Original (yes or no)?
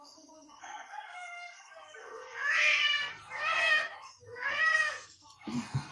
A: no